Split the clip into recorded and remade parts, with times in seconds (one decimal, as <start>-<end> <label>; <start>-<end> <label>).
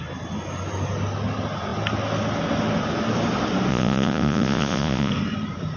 0.0-3.7 recorded; 3.7-5.1 remade; 5.1-5.8 recorded